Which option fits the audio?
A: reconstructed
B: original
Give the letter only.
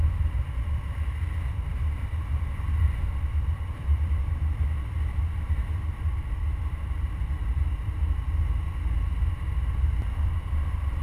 A